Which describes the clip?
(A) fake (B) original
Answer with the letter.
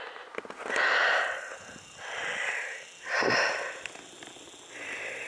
B